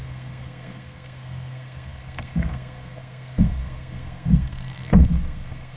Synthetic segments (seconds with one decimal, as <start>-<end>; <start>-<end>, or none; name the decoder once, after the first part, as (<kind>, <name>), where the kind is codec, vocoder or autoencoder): 0.0-5.8 (codec, SNAC)

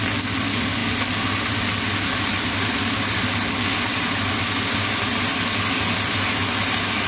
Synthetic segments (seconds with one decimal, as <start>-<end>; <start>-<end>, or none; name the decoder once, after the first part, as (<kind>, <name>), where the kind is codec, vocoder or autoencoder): none

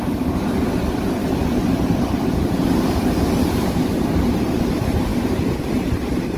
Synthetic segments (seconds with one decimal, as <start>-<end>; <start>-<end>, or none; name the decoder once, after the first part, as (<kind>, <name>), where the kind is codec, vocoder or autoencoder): 1.2-4.1 (vocoder, BigVGAN v2)

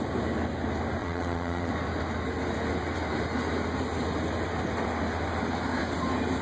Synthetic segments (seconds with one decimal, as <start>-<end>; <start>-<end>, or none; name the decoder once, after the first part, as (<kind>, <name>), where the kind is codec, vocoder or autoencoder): 1.0-1.7 (vocoder, Vocos)

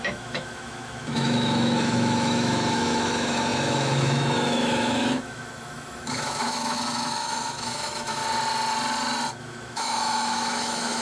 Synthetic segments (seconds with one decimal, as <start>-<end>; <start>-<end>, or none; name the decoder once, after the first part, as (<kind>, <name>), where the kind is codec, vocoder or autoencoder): 0.0-8.2 (autoencoder, DAC-VAE); 9.4-11.0

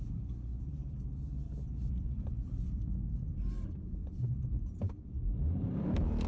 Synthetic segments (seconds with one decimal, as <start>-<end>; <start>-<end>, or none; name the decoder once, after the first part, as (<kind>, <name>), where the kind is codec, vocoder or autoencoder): 0.5-3.5 (vocoder, BigVGAN v2)

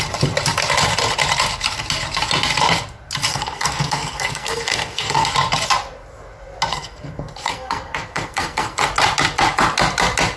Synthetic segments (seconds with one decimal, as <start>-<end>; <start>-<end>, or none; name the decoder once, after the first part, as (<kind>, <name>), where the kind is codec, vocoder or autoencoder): 3.3-5.3 (codec, SNAC); 6.7-8.9

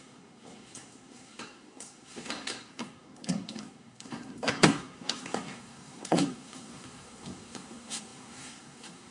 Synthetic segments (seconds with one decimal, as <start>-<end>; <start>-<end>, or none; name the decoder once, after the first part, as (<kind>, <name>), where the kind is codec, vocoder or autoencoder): 0.0-9.1 (codec, SNAC)